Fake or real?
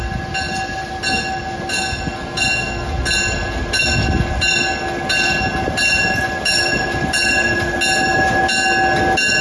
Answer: real